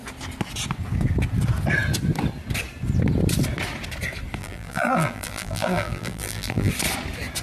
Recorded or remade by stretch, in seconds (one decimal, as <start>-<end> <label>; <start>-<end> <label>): 0.0-4.4 recorded; 4.4-6.7 remade; 6.7-7.4 recorded